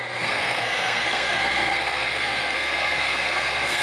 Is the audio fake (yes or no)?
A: yes